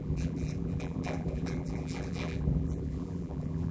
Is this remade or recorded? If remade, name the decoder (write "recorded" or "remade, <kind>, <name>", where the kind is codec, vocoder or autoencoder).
remade, vocoder, BigVGAN v2